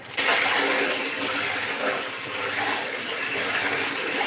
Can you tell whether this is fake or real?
real